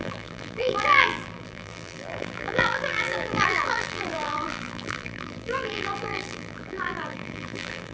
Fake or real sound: fake